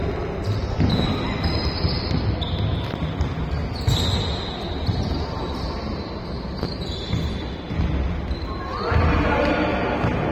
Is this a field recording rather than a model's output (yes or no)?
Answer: yes